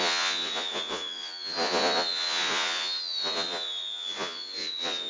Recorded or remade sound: remade